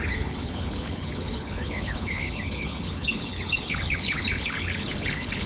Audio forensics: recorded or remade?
remade